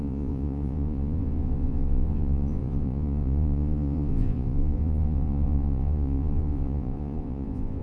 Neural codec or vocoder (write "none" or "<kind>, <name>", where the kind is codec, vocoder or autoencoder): vocoder, Vocos